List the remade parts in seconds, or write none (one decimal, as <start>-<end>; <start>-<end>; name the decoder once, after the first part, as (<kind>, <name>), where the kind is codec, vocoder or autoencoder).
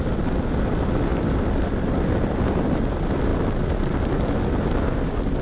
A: 1.1-1.8 (vocoder, BigVGAN v2)